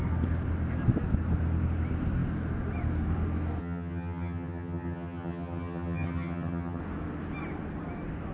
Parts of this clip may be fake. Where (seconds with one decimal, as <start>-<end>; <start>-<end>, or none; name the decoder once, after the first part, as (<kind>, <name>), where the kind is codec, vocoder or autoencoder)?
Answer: 3.6-6.8 (vocoder, HiFi-GAN)